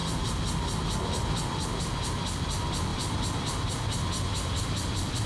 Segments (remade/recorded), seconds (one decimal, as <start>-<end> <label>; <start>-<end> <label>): 0.0-1.8 remade; 1.8-2.9 recorded; 2.9-5.3 remade